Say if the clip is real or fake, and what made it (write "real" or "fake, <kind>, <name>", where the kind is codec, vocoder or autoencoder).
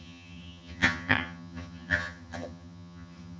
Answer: fake, vocoder, HiFi-GAN